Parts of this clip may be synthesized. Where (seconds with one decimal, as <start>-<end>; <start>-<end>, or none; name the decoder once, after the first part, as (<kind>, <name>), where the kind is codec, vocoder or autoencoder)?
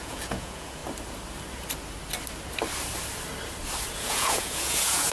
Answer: 0.0-0.8 (vocoder, Vocos); 3.9-5.1